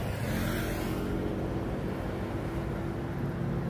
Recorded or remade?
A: recorded